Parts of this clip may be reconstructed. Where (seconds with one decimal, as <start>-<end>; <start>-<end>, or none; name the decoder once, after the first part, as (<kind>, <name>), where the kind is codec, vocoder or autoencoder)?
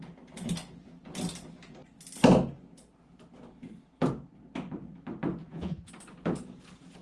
5.4-5.9 (vocoder, Vocos)